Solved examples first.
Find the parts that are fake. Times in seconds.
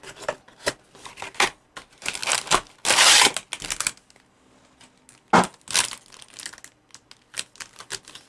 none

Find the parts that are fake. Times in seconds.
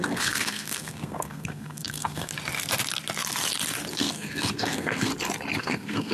0.0-2.3 (codec, SNAC); 3.9-5.1; 5.6-6.1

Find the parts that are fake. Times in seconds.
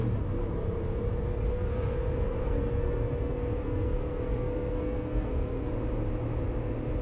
1.5-5.7 (codec, SNAC)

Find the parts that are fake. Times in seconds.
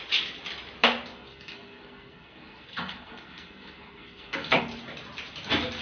1.1-4.6 (codec, SNAC)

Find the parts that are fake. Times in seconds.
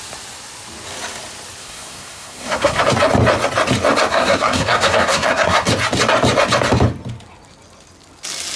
1.6-2.8 (codec, SNAC); 4.1-5.7